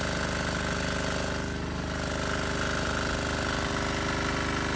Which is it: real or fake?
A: real